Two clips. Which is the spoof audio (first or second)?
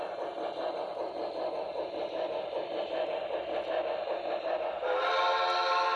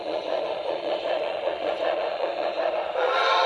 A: second